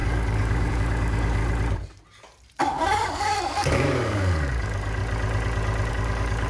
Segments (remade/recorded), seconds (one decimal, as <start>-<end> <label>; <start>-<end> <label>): 0.0-1.4 remade; 1.4-2.6 recorded; 2.6-5.0 remade; 5.0-5.9 recorded; 5.9-6.5 remade

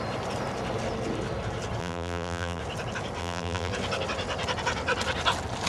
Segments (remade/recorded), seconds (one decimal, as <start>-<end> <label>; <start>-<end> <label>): 0.0-1.8 recorded; 1.8-2.6 remade; 2.6-3.2 recorded; 3.2-3.7 remade; 3.7-5.7 recorded

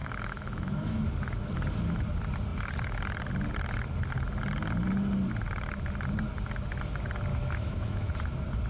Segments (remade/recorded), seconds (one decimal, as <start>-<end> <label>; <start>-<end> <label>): 0.0-1.1 remade; 1.1-7.3 recorded; 7.3-8.1 remade; 8.1-8.7 recorded

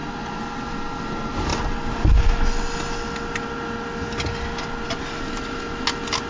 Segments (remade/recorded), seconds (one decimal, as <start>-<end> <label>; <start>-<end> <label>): 0.0-6.3 recorded